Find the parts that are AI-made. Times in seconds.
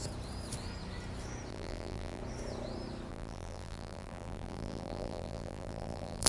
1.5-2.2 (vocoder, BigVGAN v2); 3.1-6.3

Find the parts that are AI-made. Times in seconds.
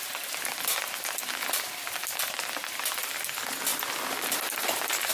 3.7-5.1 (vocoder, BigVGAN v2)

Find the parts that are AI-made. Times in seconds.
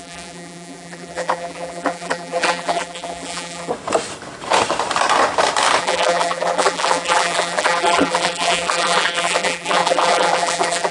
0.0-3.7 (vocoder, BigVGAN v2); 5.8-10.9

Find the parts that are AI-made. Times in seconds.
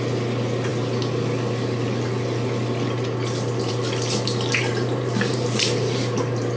4.6-6.6 (vocoder, BigVGAN v2)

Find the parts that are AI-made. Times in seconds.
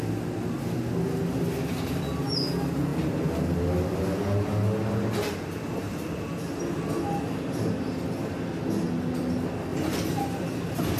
none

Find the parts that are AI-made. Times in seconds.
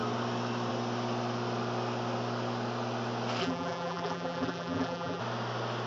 3.4-5.2 (vocoder, BigVGAN v2)